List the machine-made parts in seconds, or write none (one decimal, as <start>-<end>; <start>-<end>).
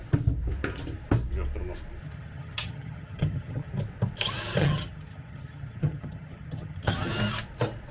2.0-3.7; 4.6-7.1